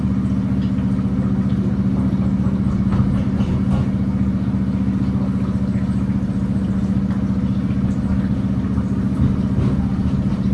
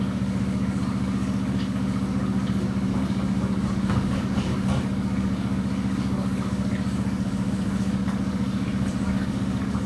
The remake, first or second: second